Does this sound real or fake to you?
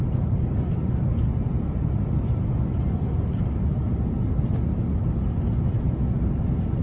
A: real